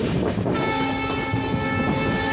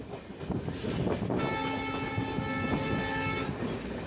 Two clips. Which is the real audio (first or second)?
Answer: second